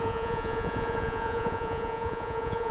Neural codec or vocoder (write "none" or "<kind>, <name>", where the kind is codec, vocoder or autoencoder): vocoder, Vocos